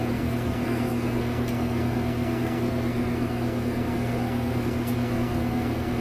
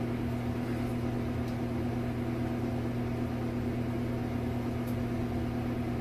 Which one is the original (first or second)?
second